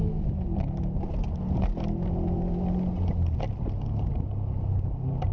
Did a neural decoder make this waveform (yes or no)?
no